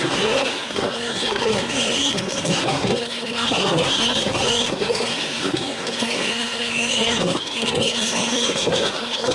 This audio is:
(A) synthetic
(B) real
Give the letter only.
A